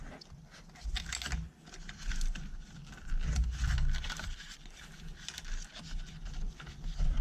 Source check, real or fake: real